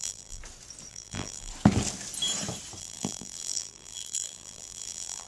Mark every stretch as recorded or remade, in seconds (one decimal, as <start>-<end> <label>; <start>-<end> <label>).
0.0-0.4 remade; 0.4-0.9 recorded; 0.9-1.5 remade; 1.5-2.8 recorded; 2.8-5.3 remade